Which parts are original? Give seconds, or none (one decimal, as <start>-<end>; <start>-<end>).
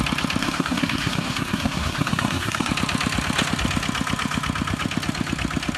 0.0-0.4; 2.7-5.8